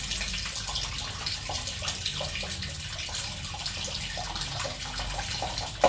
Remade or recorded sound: recorded